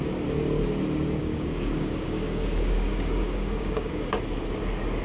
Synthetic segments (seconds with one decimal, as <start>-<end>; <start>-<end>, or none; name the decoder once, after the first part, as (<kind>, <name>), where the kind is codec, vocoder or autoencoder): 1.2-4.2 (codec, DAC)